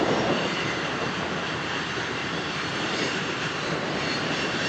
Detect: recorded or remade remade